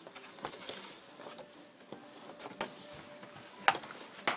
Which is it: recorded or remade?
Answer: recorded